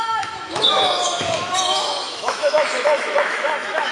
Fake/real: fake